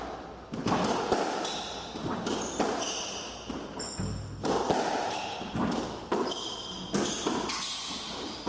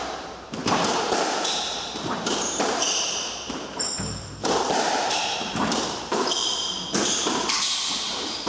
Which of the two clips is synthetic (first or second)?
second